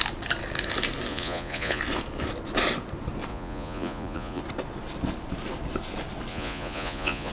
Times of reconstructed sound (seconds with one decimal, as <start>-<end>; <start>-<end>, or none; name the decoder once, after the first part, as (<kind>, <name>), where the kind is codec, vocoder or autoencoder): 1.1-1.8 (vocoder, Vocos); 3.3-4.4; 6.3-7.3